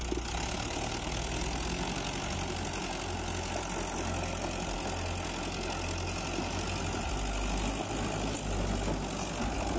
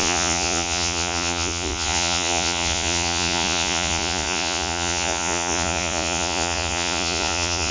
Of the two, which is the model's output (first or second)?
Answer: second